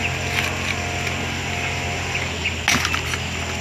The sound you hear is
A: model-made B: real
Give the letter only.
B